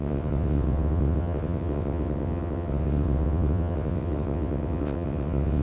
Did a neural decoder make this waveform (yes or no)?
yes